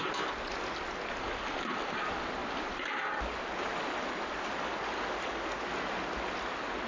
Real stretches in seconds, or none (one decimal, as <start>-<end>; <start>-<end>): 0.0-6.9